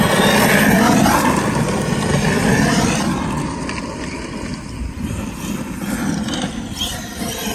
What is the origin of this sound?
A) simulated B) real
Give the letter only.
B